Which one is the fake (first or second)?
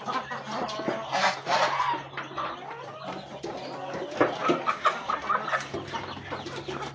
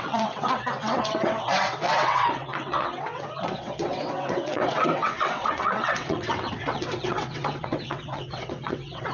second